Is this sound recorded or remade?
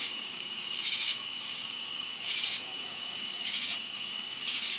remade